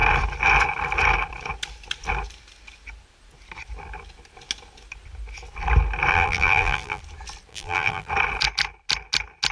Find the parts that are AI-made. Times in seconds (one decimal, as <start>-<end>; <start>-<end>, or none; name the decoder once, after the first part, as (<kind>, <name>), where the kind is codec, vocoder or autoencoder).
6.1-7.0 (vocoder, BigVGAN v2); 7.5-8.1